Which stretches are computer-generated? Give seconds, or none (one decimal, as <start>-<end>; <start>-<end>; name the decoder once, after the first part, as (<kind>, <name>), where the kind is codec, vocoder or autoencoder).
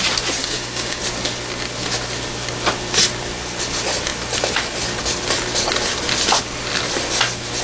0.4-1.0 (codec, DAC)